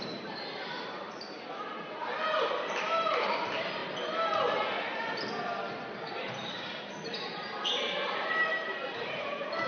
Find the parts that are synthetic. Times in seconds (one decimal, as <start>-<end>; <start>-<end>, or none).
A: 0.0-3.8; 6.2-9.7